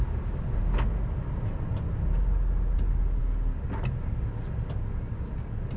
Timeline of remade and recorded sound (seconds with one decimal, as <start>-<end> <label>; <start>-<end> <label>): 0.0-5.8 recorded